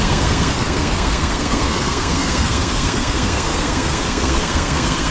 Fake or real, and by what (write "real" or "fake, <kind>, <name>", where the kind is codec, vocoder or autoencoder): fake, codec, SNAC